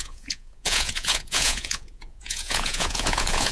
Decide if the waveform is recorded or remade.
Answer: remade